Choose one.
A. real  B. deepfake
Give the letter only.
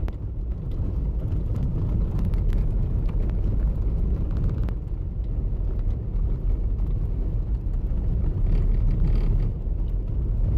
A